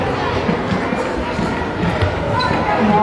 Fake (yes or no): no